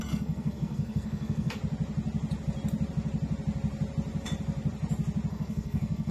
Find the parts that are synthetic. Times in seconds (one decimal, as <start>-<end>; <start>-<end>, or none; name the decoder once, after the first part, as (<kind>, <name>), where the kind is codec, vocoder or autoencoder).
0.0-1.6 (codec, SNAC); 5.3-6.1